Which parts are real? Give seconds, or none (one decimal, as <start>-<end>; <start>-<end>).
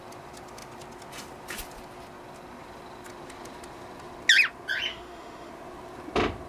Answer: 0.0-4.9; 5.5-6.5